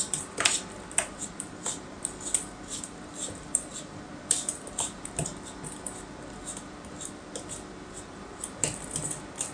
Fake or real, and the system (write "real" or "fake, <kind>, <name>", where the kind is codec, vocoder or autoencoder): real